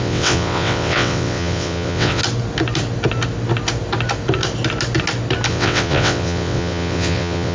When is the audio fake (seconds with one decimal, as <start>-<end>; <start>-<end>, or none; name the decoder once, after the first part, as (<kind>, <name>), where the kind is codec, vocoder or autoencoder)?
0.0-2.2 (vocoder, WaveNeXt); 5.5-7.5